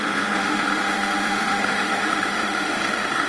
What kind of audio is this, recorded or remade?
remade